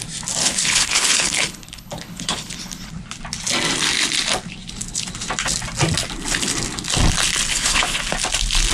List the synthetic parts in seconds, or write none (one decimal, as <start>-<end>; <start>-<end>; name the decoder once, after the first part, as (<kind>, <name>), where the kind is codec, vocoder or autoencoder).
0.4-2.9 (codec, HILCodec); 7.5-8.0